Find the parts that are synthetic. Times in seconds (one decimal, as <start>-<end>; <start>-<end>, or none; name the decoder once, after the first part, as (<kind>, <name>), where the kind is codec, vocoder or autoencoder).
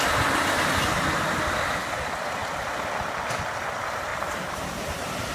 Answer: 4.1-5.3 (vocoder, BigVGAN v2)